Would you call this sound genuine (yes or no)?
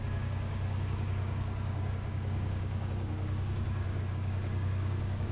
no